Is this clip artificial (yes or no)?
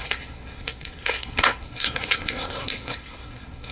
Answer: yes